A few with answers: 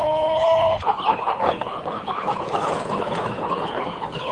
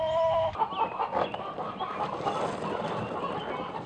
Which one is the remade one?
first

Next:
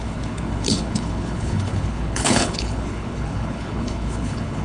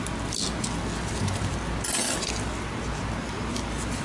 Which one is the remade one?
first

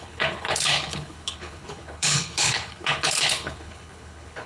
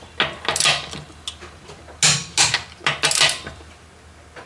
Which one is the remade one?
first